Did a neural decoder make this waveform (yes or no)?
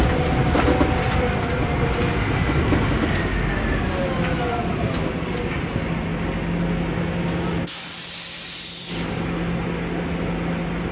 no